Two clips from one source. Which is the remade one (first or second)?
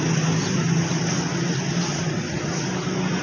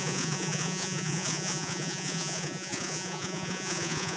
second